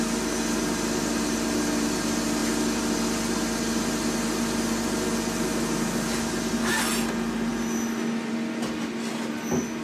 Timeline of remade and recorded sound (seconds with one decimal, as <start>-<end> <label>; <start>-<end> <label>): 0.0-9.8 recorded